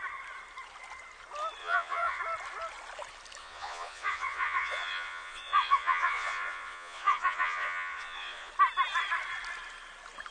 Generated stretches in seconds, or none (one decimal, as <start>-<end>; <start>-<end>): 1.6-2.2; 3.4-8.5